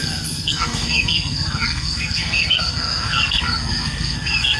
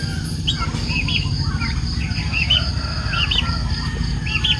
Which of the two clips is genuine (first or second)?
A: second